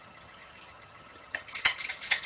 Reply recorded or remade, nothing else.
remade